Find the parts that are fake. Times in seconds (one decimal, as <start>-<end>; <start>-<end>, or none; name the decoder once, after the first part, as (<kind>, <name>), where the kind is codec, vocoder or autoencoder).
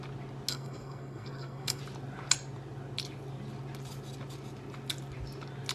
0.5-1.8 (codec, SNAC)